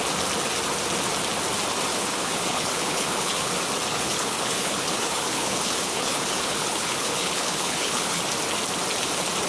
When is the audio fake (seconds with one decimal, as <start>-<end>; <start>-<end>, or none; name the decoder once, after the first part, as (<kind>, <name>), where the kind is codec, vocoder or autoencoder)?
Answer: 1.9-3.5 (codec, HILCodec); 3.9-8.2